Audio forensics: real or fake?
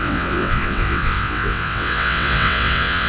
fake